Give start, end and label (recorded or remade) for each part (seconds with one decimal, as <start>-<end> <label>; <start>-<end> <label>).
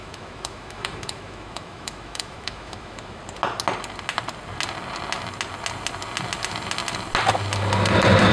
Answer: 0.0-3.2 remade; 3.2-8.3 recorded